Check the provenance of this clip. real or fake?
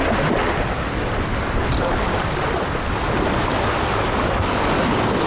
real